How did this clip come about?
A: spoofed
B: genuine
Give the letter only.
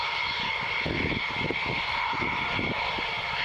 B